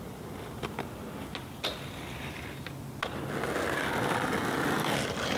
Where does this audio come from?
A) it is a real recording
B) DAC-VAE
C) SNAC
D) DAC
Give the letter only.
A